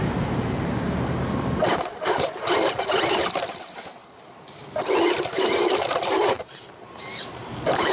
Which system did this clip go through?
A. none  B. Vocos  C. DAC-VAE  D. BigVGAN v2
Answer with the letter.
D